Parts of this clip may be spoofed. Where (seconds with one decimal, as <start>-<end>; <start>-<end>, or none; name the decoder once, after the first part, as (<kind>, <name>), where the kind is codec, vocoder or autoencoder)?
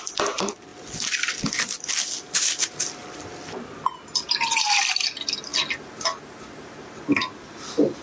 0.0-0.7 (vocoder, BigVGAN v2); 1.5-3.0; 3.8-5.5; 6.5-8.0